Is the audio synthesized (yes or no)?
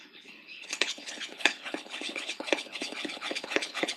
yes